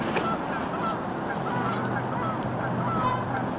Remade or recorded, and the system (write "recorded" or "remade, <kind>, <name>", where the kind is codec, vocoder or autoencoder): recorded